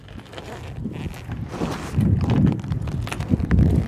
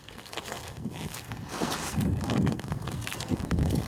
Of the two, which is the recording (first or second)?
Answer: first